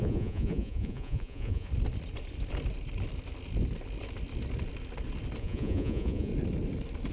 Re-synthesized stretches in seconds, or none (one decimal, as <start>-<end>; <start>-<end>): 0.0-1.7; 5.4-6.3